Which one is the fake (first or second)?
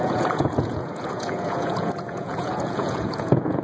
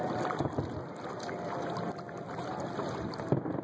first